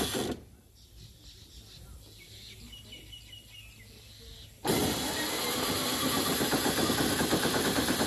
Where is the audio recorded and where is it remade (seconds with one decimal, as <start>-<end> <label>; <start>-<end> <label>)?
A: 0.0-8.1 recorded